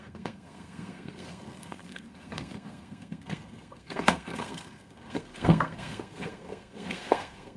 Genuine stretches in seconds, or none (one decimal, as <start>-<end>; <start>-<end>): none